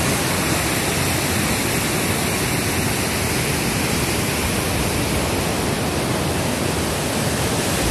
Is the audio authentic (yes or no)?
yes